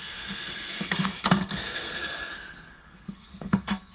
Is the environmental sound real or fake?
fake